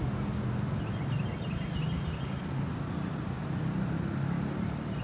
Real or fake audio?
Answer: real